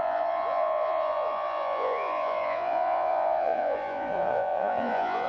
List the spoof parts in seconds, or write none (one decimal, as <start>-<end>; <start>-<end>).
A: 0.0-5.3